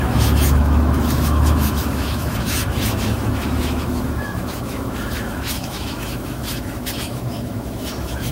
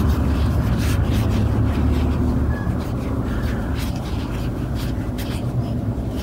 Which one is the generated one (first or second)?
first